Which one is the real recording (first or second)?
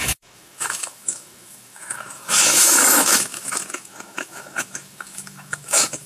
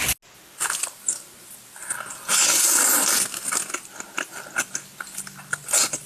second